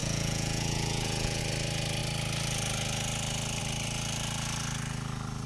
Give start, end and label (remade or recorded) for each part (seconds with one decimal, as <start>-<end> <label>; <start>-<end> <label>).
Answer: 0.0-1.4 remade; 1.4-5.5 recorded